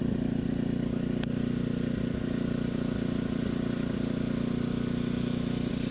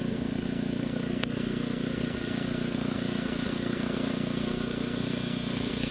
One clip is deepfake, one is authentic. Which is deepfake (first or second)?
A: second